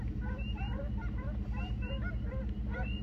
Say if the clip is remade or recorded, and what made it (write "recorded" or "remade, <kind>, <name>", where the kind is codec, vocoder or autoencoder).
recorded